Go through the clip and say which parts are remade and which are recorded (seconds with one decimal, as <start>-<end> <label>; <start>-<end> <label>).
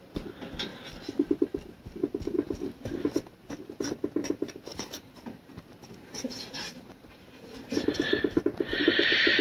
0.0-4.2 recorded; 4.2-8.4 remade; 8.4-9.4 recorded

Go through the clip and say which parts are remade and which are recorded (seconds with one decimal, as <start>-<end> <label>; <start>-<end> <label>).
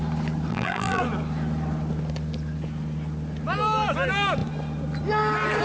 0.0-0.5 recorded; 0.5-1.0 remade; 1.0-5.6 recorded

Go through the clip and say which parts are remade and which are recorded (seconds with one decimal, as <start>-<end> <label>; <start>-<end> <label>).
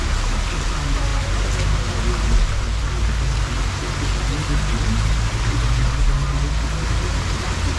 0.0-7.8 recorded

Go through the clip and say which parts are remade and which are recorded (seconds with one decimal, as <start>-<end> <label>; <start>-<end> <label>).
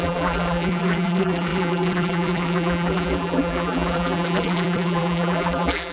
0.0-5.9 remade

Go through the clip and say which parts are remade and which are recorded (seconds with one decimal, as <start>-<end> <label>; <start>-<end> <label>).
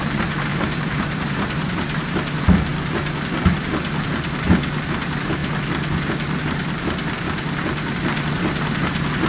0.0-0.5 recorded; 0.5-2.1 remade; 2.1-9.3 recorded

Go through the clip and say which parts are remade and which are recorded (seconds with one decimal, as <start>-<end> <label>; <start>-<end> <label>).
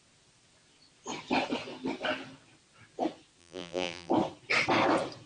0.0-3.4 recorded; 3.4-4.1 remade; 4.1-5.3 recorded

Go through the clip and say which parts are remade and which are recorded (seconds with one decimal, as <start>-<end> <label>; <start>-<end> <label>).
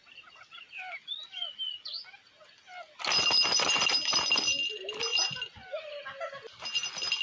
0.0-7.2 recorded